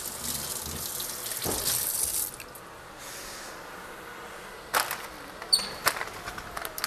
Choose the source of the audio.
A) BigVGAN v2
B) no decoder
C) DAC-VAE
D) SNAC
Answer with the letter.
B